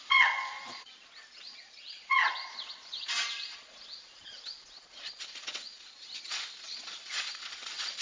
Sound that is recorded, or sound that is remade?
remade